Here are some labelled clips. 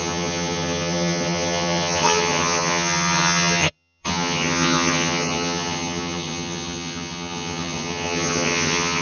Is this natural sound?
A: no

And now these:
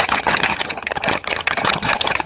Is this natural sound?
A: no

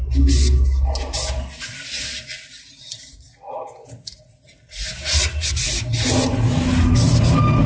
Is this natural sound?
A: yes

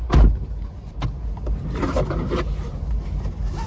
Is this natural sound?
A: yes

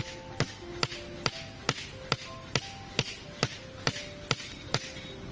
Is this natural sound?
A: yes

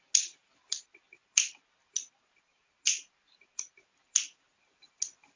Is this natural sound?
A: yes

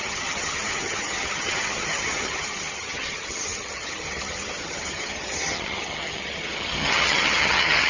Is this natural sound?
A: no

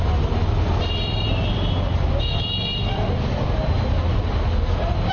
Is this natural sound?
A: yes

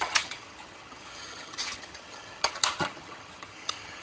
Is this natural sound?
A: no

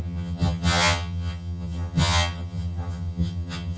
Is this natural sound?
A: no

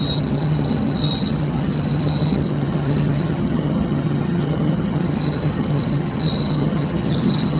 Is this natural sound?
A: no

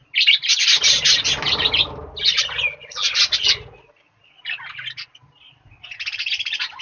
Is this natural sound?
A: yes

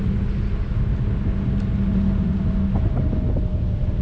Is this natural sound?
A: yes